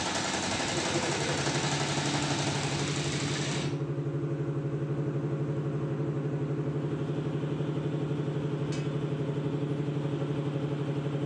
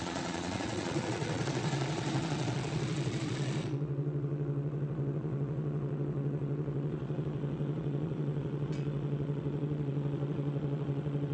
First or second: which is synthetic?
second